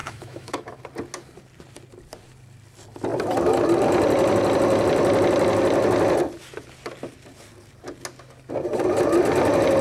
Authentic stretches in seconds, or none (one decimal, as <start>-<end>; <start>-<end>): 0.8-9.8